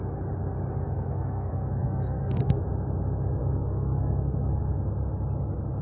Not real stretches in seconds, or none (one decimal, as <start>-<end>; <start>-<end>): 0.8-2.6; 3.4-4.6